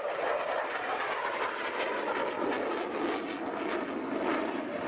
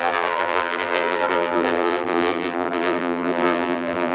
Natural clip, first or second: first